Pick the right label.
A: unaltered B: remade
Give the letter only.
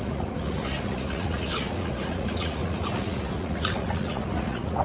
B